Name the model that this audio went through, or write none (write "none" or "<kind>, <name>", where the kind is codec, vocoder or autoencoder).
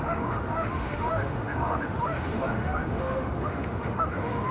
autoencoder, DAC-VAE